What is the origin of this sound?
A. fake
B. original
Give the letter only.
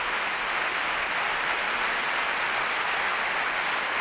B